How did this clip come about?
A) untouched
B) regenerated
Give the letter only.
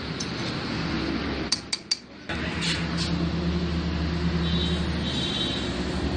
A